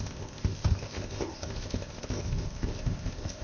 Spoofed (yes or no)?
yes